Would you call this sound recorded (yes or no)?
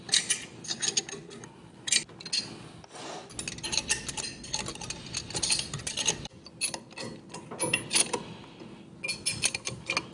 yes